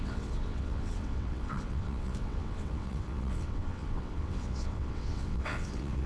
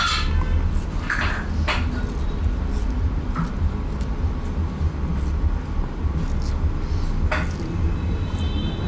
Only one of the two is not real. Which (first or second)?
first